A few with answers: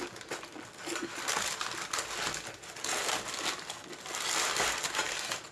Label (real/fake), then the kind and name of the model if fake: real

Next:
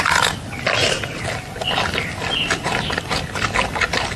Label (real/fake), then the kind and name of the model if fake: real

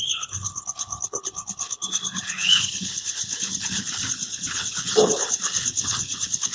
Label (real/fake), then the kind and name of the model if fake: fake, codec, HILCodec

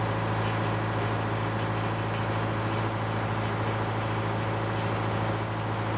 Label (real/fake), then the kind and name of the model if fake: real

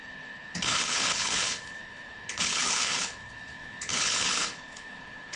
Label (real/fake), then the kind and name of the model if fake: fake, codec, HILCodec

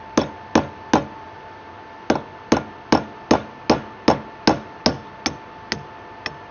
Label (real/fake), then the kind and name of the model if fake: real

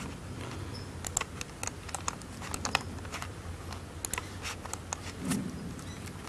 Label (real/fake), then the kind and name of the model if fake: real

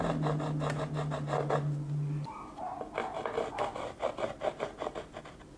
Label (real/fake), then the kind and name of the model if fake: real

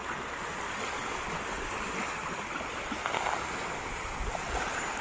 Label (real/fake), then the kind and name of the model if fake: real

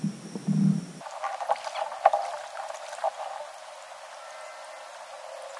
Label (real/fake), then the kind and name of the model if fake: real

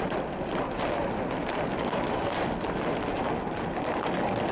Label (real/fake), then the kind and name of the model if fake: real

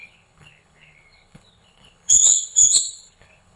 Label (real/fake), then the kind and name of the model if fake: fake, codec, HILCodec